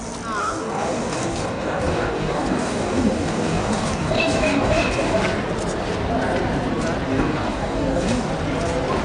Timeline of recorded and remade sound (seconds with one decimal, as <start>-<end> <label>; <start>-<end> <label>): 0.0-0.4 recorded; 0.4-5.2 remade; 5.2-7.1 recorded; 7.1-8.3 remade; 8.3-9.0 recorded